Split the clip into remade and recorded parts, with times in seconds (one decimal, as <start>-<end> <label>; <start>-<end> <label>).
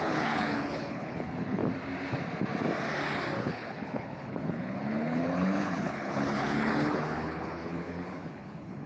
0.0-1.6 remade; 1.6-3.4 recorded; 3.4-8.9 remade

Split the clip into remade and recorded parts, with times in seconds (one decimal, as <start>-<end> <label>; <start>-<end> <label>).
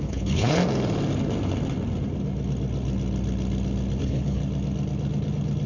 0.0-0.6 remade; 0.6-4.0 recorded; 4.0-4.4 remade; 4.4-5.7 recorded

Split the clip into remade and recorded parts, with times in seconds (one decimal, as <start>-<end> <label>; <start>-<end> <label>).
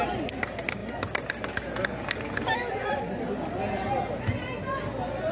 0.0-5.3 recorded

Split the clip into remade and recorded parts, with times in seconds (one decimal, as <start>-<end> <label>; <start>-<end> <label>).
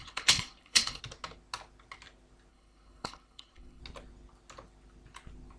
0.0-1.0 remade; 1.0-2.5 recorded; 2.5-3.8 remade; 3.8-5.6 recorded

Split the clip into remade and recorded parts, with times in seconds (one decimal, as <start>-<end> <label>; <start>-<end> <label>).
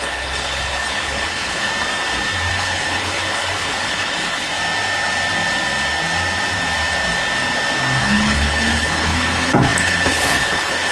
0.0-1.7 remade; 1.7-2.5 recorded; 2.5-4.5 remade; 4.5-8.0 recorded; 8.0-10.9 remade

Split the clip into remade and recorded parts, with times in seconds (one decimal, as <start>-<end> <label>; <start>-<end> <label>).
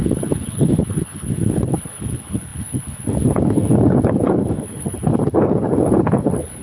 0.0-6.6 remade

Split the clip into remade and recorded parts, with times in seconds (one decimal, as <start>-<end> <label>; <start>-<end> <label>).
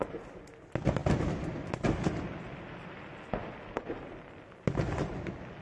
0.0-5.6 recorded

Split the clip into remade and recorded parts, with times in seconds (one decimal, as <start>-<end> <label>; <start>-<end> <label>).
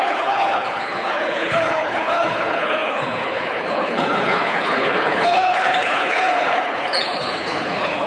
0.0-8.1 remade